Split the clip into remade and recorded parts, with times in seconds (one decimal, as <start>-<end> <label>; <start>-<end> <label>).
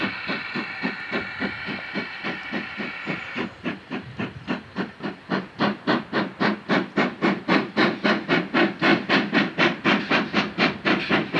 0.0-11.4 recorded